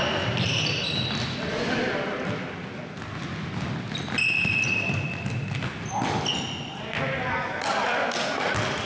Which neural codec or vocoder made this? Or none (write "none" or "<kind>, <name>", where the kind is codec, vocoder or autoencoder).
none